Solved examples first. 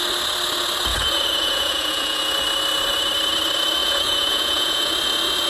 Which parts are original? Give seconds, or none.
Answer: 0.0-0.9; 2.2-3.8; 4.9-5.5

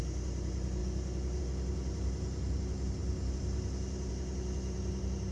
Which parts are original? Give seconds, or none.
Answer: 0.0-5.3

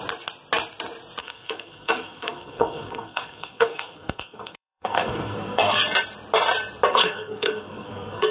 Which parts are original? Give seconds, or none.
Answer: 0.0-1.2; 5.8-6.9